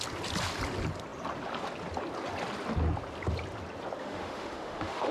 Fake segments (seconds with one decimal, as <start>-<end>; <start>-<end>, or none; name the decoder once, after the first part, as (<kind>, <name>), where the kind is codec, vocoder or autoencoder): 4.0-5.1 (autoencoder, DAC-VAE)